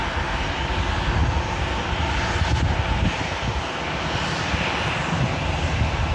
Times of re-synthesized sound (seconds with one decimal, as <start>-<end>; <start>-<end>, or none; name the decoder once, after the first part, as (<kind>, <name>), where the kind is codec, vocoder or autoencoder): 0.0-0.7 (vocoder, BigVGAN v2)